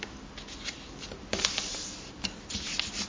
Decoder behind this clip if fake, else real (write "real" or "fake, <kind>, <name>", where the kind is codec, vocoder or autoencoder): real